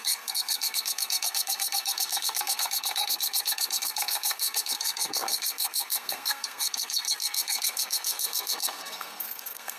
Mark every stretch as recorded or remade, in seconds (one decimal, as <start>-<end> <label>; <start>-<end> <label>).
0.0-9.8 remade